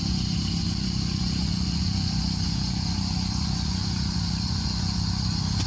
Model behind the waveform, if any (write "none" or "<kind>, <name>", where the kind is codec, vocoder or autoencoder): vocoder, Vocos